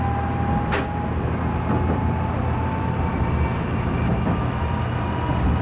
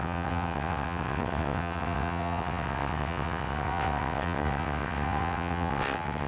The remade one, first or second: second